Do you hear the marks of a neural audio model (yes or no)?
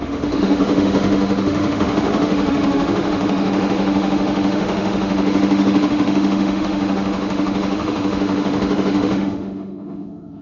yes